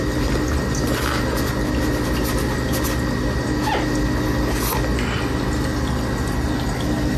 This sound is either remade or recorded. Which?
recorded